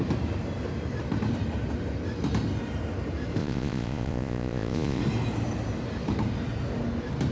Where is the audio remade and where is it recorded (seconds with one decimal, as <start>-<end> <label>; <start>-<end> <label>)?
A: 0.0-3.4 recorded; 3.4-5.0 remade; 5.0-7.3 recorded